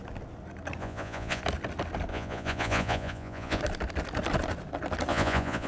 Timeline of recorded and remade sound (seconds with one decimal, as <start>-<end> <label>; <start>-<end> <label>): 0.0-0.8 recorded; 0.8-1.4 remade; 1.4-2.1 recorded; 2.1-3.6 remade; 3.6-5.1 recorded; 5.1-5.7 remade